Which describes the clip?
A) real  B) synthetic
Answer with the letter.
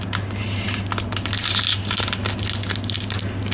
A